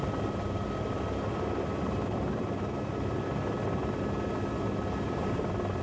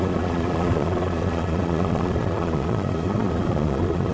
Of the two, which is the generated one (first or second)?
second